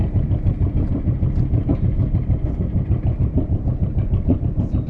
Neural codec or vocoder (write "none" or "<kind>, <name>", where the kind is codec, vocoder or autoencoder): none